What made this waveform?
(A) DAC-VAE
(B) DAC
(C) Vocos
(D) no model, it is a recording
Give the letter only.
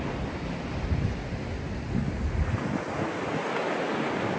D